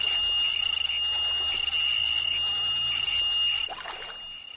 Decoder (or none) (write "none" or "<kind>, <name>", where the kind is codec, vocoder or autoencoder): none